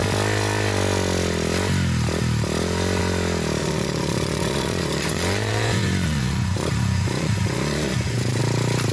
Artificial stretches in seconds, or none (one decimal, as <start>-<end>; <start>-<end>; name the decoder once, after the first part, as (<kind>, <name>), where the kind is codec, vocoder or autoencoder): 3.6-8.4 (vocoder, Vocos)